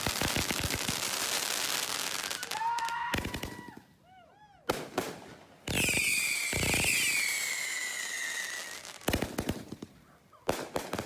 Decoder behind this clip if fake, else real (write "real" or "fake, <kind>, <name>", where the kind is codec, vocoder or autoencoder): real